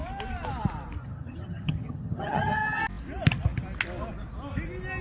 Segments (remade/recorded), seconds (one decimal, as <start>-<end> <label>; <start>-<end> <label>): 0.0-1.0 recorded; 1.0-2.8 remade; 2.8-5.0 recorded